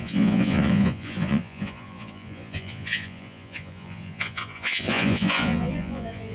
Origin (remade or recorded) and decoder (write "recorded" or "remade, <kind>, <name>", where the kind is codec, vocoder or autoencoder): remade, vocoder, Vocos